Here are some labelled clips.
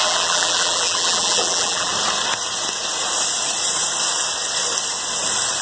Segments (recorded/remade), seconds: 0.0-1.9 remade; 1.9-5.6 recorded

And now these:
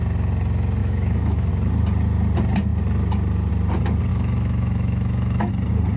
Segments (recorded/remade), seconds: 0.0-0.8 recorded; 0.8-1.5 remade; 1.5-4.1 recorded; 4.1-5.5 remade; 5.5-6.0 recorded

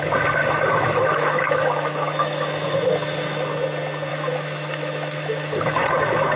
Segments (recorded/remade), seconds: 0.0-0.4 recorded; 0.4-2.8 remade; 2.8-4.1 recorded; 4.1-5.8 remade; 5.8-6.4 recorded

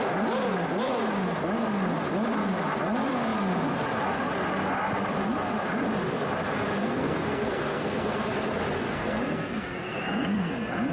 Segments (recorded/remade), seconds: 0.0-6.8 recorded; 6.8-8.3 remade; 8.3-8.8 recorded; 8.8-10.5 remade; 10.5-10.9 recorded